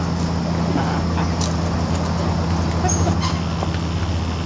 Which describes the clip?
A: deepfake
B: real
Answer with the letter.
B